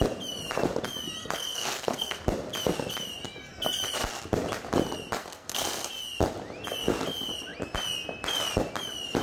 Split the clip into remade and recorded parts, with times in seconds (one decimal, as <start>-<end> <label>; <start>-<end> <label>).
0.0-1.2 recorded; 1.2-2.2 remade; 2.2-5.2 recorded; 5.2-5.9 remade; 5.9-9.2 recorded